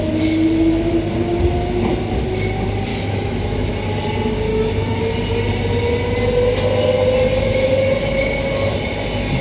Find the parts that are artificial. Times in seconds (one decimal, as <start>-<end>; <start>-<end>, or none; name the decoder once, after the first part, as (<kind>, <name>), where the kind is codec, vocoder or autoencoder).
2.9-3.7 (autoencoder, DAC-VAE); 4.5-5.0